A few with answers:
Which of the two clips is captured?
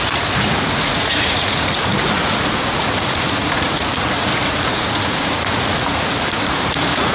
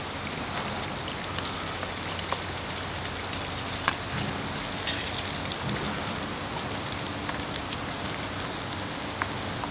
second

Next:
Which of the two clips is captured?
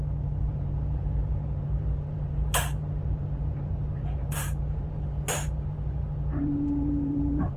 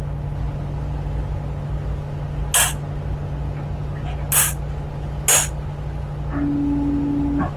second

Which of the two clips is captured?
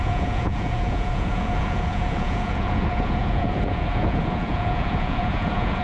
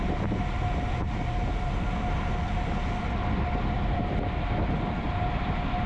second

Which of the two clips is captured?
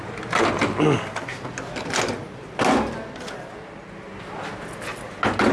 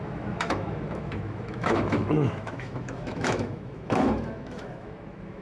first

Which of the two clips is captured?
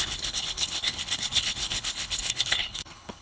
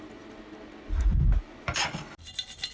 second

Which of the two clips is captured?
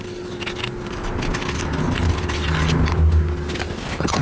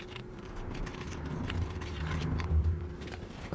first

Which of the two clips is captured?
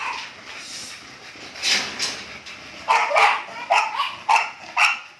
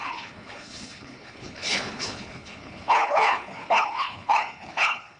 first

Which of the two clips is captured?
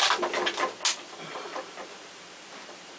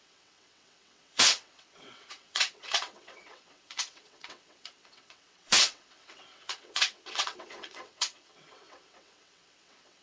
first